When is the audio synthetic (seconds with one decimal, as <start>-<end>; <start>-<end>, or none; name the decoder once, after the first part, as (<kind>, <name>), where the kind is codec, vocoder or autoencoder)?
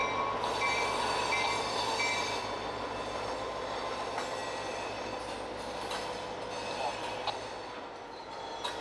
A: none